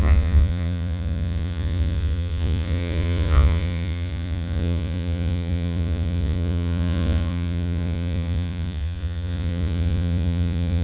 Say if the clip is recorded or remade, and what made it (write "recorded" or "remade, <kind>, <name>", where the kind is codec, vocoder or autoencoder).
remade, vocoder, Vocos